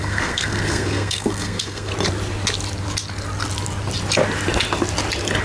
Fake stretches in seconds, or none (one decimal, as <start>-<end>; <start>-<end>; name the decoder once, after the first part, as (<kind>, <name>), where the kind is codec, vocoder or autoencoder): 0.0-1.9 (codec, SNAC)